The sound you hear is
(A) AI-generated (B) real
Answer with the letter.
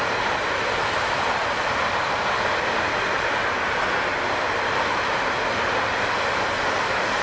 B